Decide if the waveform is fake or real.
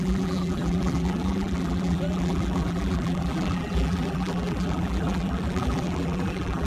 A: fake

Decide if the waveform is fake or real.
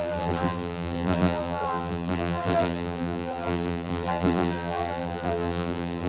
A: fake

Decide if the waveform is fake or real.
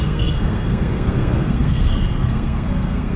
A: fake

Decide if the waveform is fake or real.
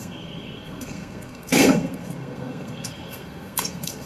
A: fake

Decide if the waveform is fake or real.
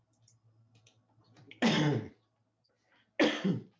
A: real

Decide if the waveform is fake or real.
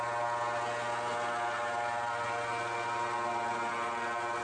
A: real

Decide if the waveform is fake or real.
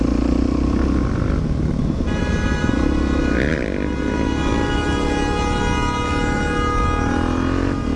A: real